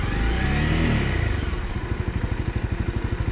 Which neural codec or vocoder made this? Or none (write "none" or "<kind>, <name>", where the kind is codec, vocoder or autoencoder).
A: none